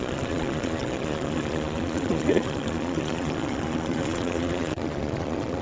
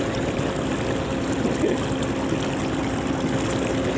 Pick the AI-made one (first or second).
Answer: first